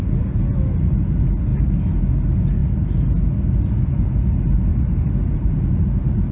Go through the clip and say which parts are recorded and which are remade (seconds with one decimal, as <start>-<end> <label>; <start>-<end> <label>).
0.0-4.7 recorded; 4.7-6.3 remade

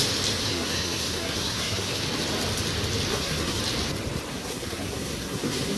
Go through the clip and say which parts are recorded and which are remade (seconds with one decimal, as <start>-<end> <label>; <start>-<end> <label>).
0.0-0.4 recorded; 0.4-2.0 remade; 2.0-3.1 recorded; 3.1-3.6 remade; 3.6-4.3 recorded; 4.3-5.8 remade

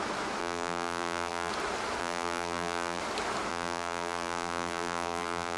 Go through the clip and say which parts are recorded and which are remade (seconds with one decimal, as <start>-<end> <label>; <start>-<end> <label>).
0.0-0.4 recorded; 0.4-1.5 remade; 1.5-2.0 recorded; 2.0-3.0 remade; 3.0-3.5 recorded; 3.5-5.6 remade

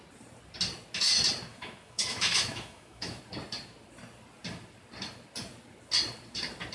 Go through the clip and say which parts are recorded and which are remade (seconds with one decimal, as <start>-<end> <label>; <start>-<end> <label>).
0.0-1.5 recorded; 1.5-3.2 remade; 3.2-6.7 recorded

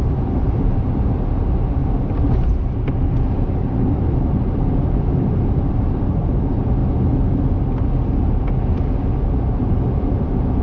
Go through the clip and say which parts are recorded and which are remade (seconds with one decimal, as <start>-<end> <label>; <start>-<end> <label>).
0.0-6.8 remade; 6.8-9.5 recorded; 9.5-10.6 remade